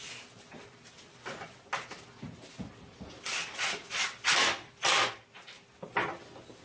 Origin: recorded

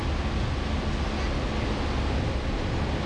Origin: recorded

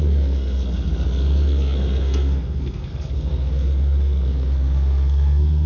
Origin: remade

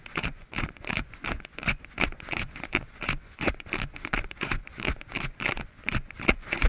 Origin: remade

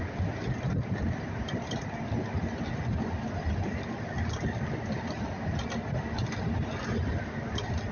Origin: recorded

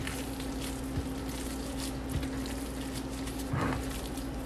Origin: recorded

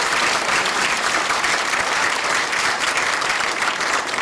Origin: remade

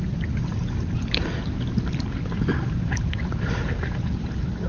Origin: recorded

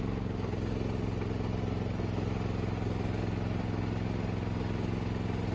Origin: recorded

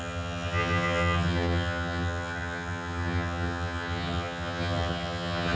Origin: remade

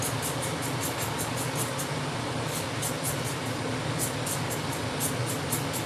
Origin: recorded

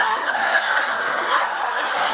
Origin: remade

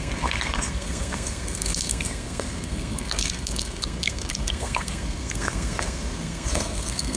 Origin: remade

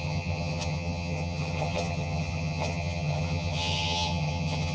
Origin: remade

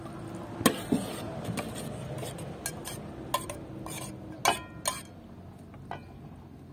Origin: recorded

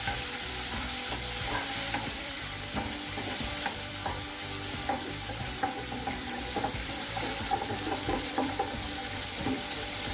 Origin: remade